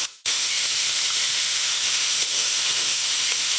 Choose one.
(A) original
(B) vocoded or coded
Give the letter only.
B